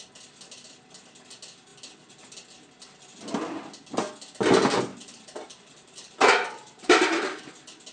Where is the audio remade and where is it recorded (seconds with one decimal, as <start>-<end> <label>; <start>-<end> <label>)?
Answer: 0.0-4.9 recorded; 4.9-7.5 remade; 7.5-7.9 recorded

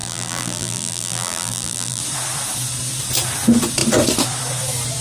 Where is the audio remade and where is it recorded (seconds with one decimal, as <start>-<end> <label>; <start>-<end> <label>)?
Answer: 0.0-2.0 remade; 2.0-5.0 recorded

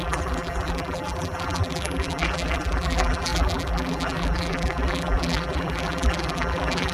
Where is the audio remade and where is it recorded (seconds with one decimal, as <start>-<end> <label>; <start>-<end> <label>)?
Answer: 0.0-6.9 remade

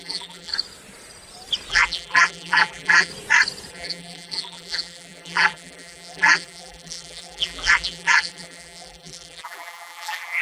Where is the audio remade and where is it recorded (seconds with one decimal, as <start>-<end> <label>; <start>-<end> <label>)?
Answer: 0.0-0.5 remade; 0.5-1.7 recorded; 1.7-3.1 remade; 3.1-3.7 recorded; 3.7-10.4 remade

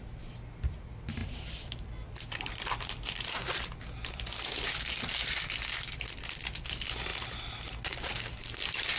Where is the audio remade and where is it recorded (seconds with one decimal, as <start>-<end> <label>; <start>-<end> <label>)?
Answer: 0.0-1.2 recorded; 1.2-6.3 remade; 6.3-9.0 recorded

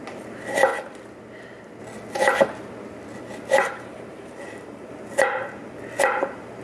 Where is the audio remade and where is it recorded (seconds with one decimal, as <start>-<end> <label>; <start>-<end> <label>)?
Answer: 0.0-3.6 recorded; 3.6-4.9 remade; 4.9-6.6 recorded